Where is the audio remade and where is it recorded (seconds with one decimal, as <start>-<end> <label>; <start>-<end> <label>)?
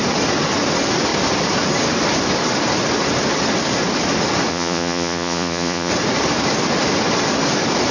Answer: 0.0-4.5 recorded; 4.5-5.9 remade; 5.9-7.9 recorded